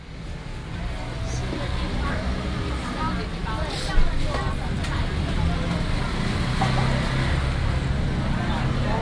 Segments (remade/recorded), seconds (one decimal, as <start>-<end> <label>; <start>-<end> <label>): 0.0-9.0 recorded